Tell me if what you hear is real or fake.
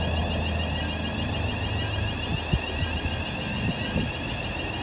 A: real